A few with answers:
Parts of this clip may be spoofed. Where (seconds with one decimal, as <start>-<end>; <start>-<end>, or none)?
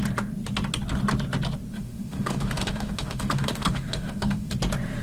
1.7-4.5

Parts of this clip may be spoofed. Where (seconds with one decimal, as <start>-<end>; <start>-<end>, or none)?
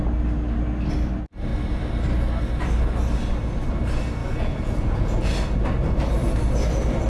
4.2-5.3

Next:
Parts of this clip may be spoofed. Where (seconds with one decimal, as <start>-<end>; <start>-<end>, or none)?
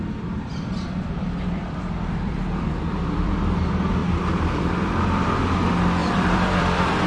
0.0-3.3; 4.0-4.9; 6.0-7.1